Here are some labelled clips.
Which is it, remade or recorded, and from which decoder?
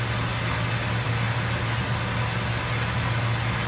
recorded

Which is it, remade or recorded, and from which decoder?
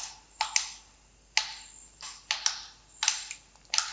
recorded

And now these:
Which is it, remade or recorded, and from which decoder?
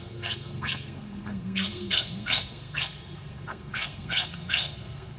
remade, codec, SNAC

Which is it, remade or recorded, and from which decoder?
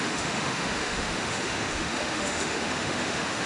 remade, autoencoder, DAC-VAE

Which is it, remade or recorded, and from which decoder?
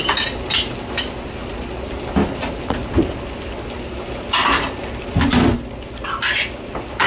recorded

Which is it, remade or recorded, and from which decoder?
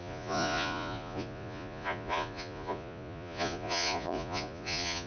remade, vocoder, Vocos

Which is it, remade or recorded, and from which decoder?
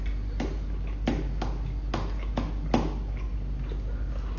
recorded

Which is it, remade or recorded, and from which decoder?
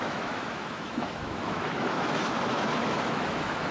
remade, autoencoder, DAC-VAE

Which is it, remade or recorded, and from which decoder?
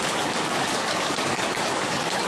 remade, codec, DAC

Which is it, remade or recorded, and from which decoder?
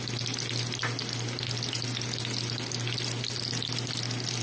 recorded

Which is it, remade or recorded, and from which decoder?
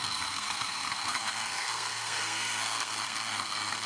remade, codec, SNAC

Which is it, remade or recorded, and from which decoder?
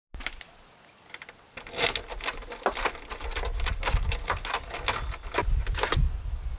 recorded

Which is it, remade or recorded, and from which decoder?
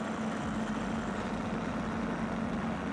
recorded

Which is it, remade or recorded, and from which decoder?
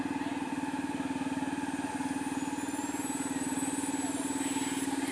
recorded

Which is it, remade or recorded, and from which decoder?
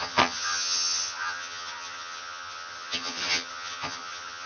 remade, vocoder, HiFi-GAN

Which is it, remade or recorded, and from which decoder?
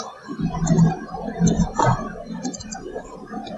recorded